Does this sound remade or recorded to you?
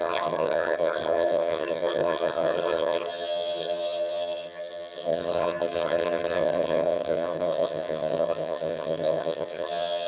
remade